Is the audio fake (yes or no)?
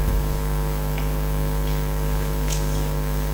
yes